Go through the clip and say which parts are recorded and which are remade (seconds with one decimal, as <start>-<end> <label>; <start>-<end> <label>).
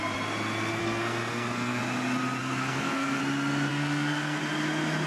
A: 0.0-0.8 recorded; 0.8-1.8 remade; 1.8-2.4 recorded; 2.4-3.2 remade; 3.2-3.7 recorded; 3.7-4.4 remade; 4.4-5.1 recorded